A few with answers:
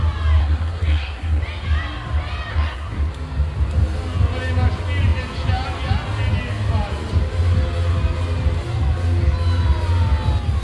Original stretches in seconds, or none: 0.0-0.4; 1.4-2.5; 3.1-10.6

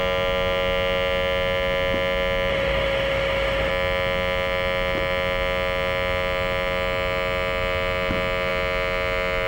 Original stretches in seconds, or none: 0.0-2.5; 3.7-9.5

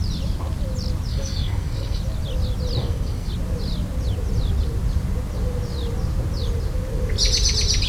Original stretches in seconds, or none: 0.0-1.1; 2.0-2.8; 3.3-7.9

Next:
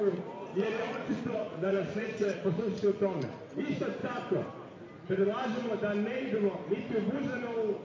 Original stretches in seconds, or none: 0.0-0.5; 3.4-7.8

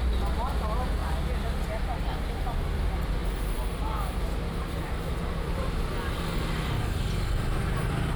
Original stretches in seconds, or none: 0.0-8.2

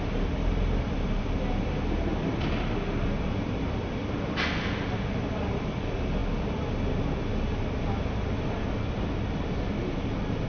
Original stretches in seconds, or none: 0.0-10.5